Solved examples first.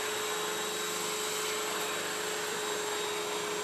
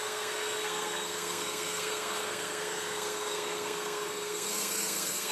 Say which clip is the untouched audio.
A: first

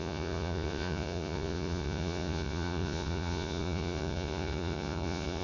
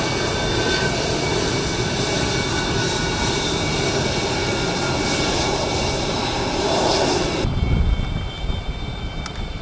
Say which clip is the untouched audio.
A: second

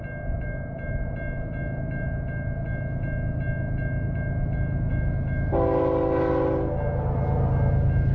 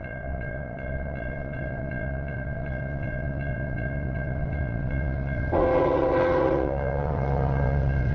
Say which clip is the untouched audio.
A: first